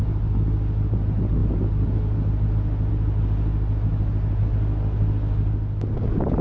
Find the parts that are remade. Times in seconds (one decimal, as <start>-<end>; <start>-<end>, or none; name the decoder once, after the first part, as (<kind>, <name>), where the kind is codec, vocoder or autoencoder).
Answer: none